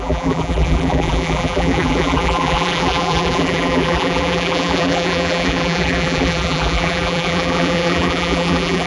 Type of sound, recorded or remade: remade